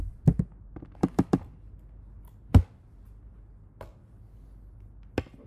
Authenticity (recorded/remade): recorded